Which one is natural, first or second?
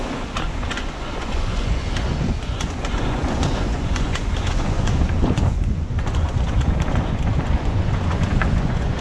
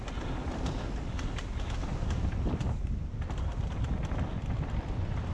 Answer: second